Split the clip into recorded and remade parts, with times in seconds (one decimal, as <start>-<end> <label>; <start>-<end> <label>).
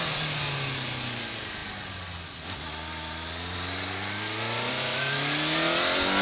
0.0-6.2 recorded